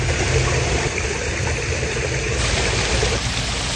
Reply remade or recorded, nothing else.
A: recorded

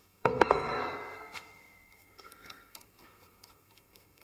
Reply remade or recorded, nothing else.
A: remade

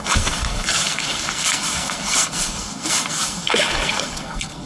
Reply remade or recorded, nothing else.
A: remade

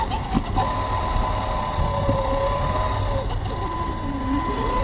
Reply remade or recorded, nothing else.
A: recorded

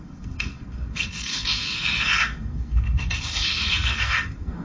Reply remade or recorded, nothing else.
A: remade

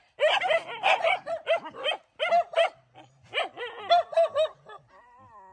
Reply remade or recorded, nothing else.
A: recorded